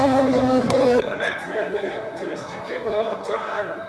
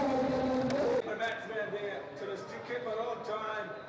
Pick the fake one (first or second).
first